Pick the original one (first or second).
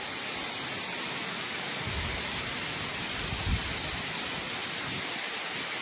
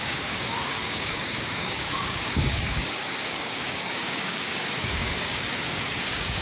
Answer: first